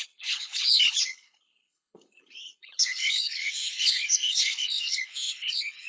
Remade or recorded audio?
remade